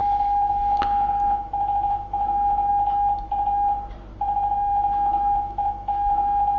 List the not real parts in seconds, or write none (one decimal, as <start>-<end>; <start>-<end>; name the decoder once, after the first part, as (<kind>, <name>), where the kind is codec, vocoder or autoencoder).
0.0-2.7 (autoencoder, DAC-VAE); 4.7-6.6